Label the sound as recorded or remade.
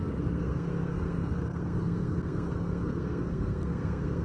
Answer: remade